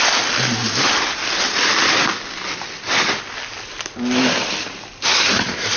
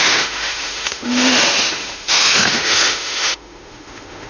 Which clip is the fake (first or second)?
second